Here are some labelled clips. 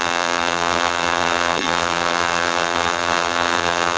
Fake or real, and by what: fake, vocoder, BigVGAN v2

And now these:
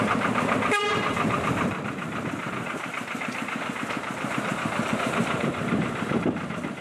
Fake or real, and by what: fake, vocoder, BigVGAN v2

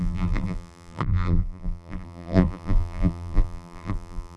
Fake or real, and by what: fake, vocoder, BigVGAN v2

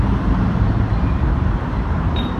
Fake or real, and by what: fake, vocoder, BigVGAN v2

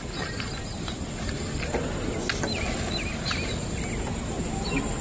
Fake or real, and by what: real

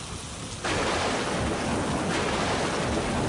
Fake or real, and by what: real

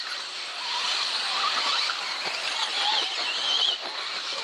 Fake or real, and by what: real